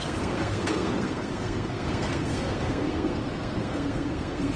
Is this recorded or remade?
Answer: remade